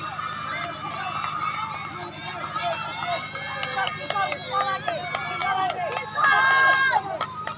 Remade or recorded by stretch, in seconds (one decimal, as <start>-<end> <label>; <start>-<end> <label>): 0.0-7.6 recorded